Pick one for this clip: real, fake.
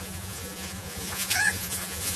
fake